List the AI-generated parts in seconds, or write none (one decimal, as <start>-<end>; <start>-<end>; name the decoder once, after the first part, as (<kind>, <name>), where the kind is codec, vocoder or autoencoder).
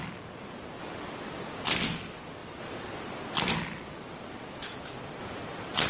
none